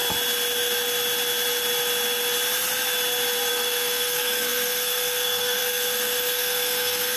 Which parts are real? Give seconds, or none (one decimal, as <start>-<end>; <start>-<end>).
0.0-3.5